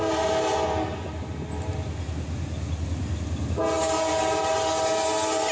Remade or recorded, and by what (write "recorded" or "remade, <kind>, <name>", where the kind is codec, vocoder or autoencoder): recorded